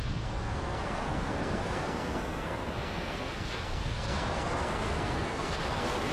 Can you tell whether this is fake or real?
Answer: fake